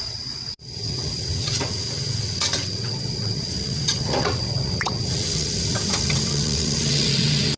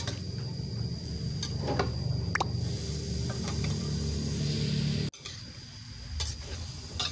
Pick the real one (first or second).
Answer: second